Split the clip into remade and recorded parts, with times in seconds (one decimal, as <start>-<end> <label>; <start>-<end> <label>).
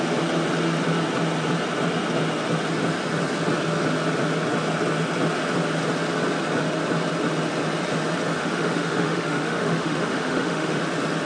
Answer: 0.0-8.4 recorded; 8.4-10.8 remade; 10.8-11.3 recorded